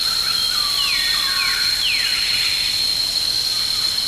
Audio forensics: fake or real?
real